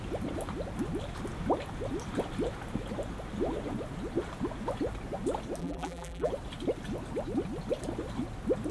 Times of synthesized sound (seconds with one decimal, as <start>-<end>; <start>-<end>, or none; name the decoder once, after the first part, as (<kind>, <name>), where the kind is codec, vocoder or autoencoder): 5.6-6.3 (vocoder, BigVGAN v2)